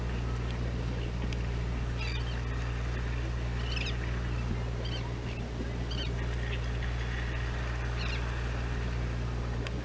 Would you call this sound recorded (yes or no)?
yes